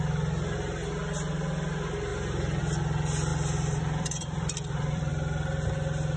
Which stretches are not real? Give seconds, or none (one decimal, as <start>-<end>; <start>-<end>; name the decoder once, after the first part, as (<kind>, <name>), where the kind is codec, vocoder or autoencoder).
3.3-5.1 (vocoder, BigVGAN v2)